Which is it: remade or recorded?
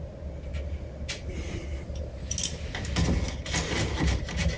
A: recorded